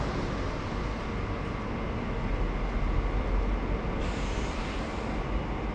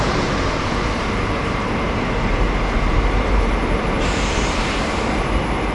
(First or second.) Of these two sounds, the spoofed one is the second